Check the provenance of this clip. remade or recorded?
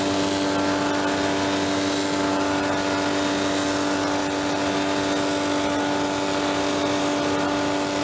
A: recorded